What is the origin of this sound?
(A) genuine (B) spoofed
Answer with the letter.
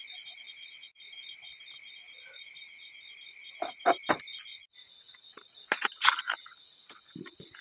A